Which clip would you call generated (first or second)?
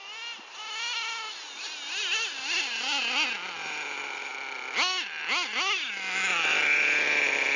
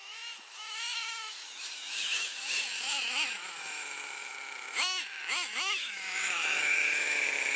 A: second